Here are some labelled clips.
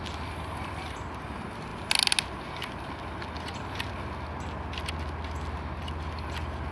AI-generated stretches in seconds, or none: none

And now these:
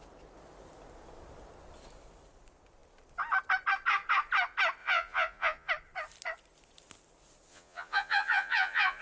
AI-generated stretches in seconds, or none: 4.8-5.7; 7.5-9.0